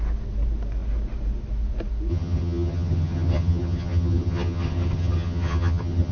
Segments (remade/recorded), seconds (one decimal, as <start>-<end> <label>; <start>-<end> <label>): 0.0-2.1 recorded; 2.1-6.1 remade